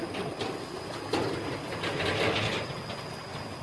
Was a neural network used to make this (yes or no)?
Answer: no